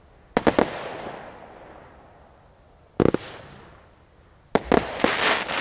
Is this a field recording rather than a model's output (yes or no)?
yes